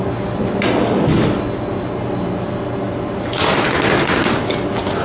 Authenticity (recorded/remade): recorded